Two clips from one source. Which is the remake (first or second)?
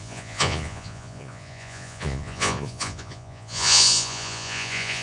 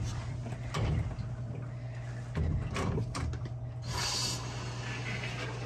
first